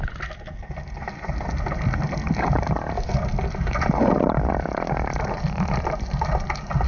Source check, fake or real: real